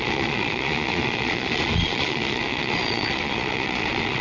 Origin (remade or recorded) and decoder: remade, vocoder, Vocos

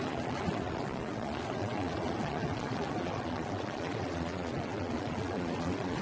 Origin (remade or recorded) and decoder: remade, vocoder, Vocos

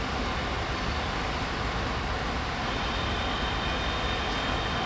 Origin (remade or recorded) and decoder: recorded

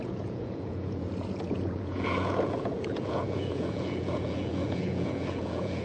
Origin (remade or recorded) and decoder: remade, vocoder, Vocos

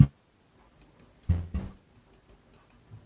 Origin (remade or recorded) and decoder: recorded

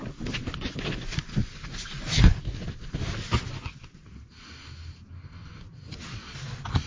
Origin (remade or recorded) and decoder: recorded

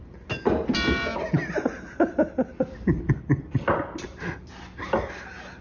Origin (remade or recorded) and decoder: recorded